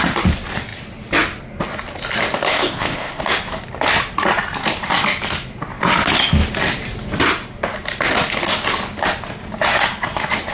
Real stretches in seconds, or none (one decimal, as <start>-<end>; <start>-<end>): 0.0-2.5; 3.2-10.5